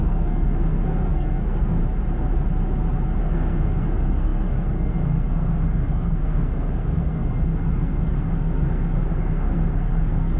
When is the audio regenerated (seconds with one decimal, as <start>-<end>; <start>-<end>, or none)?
0.0-1.8; 3.2-10.4